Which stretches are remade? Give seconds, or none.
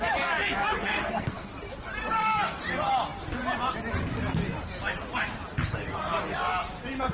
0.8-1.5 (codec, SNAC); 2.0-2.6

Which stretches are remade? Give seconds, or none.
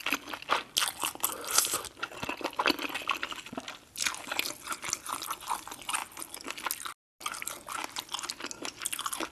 none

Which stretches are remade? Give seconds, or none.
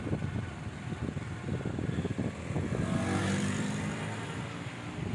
3.2-4.4 (vocoder, BigVGAN v2)